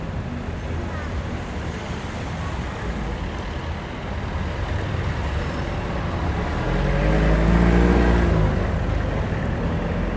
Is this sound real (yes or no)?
yes